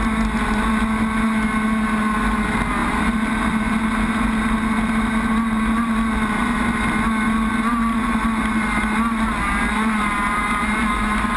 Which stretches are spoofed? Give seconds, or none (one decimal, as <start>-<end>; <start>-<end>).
none